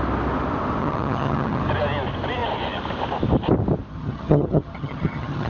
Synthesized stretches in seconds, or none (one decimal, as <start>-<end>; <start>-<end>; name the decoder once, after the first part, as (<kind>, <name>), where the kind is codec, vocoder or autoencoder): 0.8-1.6 (vocoder, HiFi-GAN); 3.9-5.5